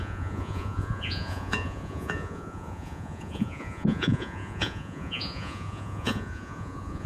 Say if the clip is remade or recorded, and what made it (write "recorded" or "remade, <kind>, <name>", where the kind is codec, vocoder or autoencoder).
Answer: remade, vocoder, Vocos